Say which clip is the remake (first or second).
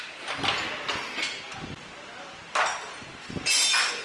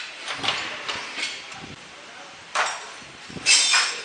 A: second